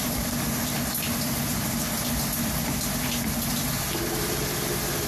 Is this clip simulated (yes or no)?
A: no